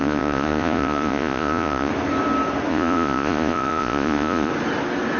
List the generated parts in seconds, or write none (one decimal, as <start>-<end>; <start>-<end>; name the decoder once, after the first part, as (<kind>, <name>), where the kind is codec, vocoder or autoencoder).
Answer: 0.0-1.9 (vocoder, Vocos); 2.7-4.5

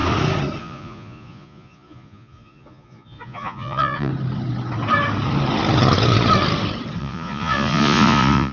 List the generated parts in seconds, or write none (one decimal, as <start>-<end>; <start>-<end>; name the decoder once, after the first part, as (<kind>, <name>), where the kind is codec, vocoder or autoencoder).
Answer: 0.6-4.1 (vocoder, Vocos); 7.0-8.5

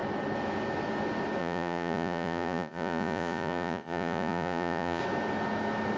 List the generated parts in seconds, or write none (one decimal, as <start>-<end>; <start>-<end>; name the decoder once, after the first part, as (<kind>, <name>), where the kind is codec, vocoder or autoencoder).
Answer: 1.4-5.0 (vocoder, Vocos)